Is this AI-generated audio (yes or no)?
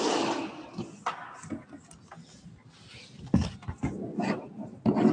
no